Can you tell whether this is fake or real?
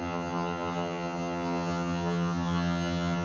fake